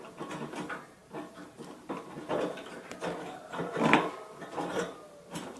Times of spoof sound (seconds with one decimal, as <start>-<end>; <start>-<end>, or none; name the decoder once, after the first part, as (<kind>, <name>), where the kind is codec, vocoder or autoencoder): none